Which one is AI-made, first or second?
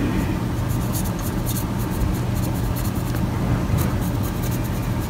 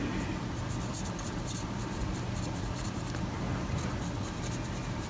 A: second